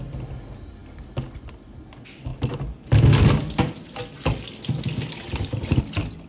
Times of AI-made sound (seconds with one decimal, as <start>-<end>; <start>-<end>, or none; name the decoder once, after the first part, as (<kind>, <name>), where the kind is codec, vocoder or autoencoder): none